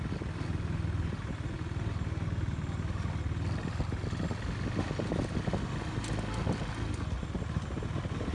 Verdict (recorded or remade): recorded